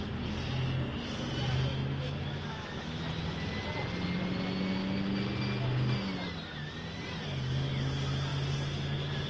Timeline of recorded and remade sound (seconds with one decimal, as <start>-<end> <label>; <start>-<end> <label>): 0.0-1.7 recorded; 1.7-3.0 remade; 3.0-9.3 recorded